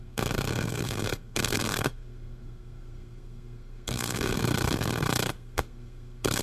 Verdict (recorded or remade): remade